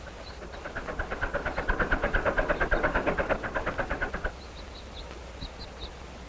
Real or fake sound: fake